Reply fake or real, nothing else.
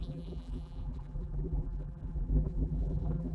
fake